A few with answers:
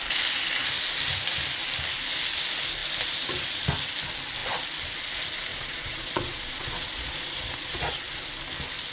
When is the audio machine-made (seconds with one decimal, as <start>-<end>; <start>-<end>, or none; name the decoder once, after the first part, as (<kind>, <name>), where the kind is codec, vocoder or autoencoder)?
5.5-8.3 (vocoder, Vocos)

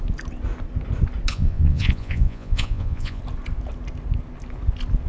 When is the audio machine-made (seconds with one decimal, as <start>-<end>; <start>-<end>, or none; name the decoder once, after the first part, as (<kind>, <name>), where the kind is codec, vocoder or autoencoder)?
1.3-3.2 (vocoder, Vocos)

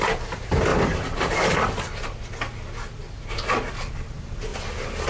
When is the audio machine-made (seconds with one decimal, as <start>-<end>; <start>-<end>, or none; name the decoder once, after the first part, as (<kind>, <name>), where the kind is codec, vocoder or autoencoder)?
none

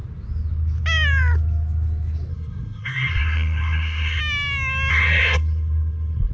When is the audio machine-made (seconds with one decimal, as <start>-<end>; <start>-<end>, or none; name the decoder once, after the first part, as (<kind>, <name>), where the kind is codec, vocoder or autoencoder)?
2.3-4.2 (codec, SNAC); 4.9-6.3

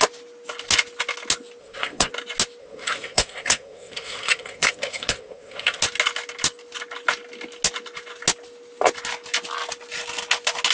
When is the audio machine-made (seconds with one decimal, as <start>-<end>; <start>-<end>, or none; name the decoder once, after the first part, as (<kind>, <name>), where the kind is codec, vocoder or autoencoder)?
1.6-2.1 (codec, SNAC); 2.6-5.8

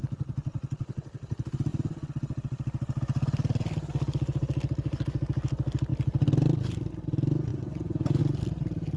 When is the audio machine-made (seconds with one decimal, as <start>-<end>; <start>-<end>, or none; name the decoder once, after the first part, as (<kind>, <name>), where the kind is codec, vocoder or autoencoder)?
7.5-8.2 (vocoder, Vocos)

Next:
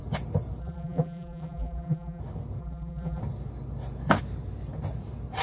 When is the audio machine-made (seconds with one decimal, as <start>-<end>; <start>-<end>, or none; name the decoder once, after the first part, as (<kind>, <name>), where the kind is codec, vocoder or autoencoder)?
0.6-2.2 (vocoder, BigVGAN v2); 2.6-3.2